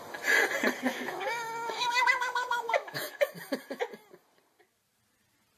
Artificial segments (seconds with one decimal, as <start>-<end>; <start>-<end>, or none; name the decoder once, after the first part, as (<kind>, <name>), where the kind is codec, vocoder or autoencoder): 0.9-3.2 (autoencoder, DAC-VAE)